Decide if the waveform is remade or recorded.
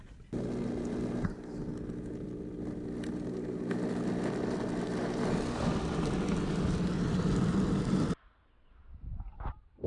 recorded